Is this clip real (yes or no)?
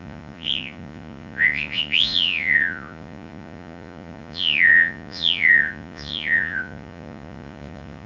no